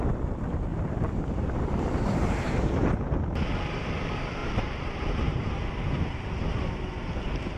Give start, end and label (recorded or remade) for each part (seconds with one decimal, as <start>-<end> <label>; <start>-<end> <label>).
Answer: 0.0-0.7 recorded; 0.7-3.1 remade; 3.1-4.4 recorded; 4.4-5.6 remade; 5.6-7.6 recorded